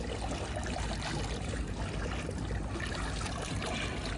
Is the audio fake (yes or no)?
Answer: no